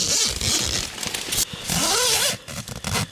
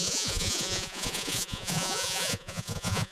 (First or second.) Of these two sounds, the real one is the first